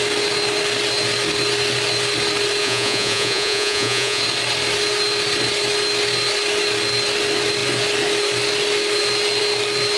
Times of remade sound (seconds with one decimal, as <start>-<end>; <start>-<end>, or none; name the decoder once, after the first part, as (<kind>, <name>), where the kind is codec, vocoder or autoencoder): 2.6-4.2 (vocoder, Vocos)